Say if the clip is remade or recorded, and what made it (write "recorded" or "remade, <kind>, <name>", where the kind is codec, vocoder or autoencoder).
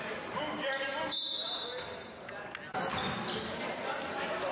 recorded